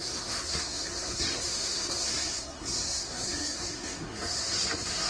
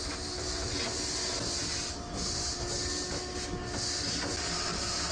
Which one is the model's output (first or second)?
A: first